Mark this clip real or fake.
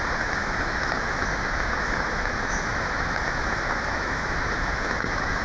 fake